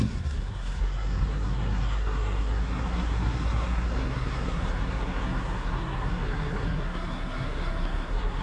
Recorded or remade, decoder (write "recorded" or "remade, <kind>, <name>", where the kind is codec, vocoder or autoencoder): remade, codec, SNAC